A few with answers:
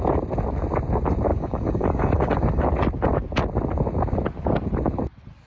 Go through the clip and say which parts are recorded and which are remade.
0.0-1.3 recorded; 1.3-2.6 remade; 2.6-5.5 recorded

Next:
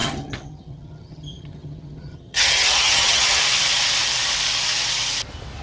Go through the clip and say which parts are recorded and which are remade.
0.0-3.4 remade; 3.4-5.6 recorded

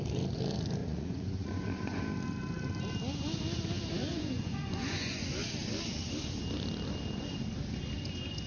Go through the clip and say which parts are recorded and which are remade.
0.0-0.8 recorded; 0.8-2.0 remade; 2.0-4.1 recorded; 4.1-5.3 remade; 5.3-8.5 recorded

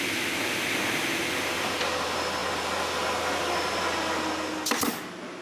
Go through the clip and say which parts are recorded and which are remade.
0.0-5.4 recorded